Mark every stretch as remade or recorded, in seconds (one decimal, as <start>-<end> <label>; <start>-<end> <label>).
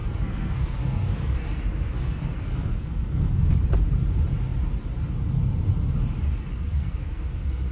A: 0.0-3.5 remade; 3.5-6.5 recorded; 6.5-7.7 remade